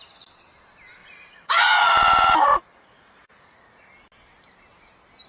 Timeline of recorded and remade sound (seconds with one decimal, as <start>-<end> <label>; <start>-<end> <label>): 0.0-1.0 recorded; 1.0-3.8 remade; 3.8-5.3 recorded